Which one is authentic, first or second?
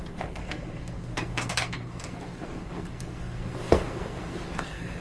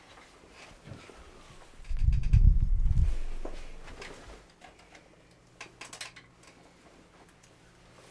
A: second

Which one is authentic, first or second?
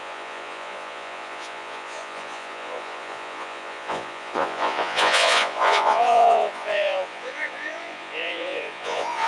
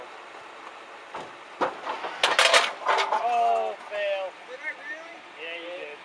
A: second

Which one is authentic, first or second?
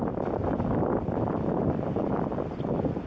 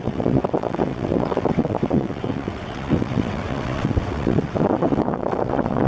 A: first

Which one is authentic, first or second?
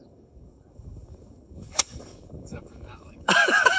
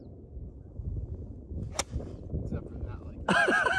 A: second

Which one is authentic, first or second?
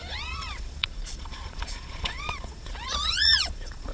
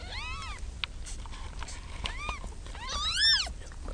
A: second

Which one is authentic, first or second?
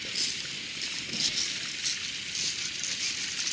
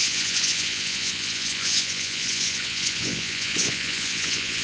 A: first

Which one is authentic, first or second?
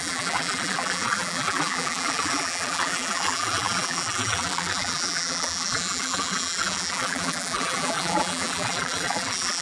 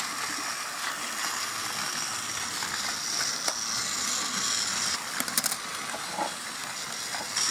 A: second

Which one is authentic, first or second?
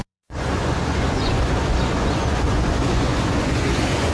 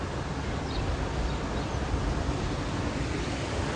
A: second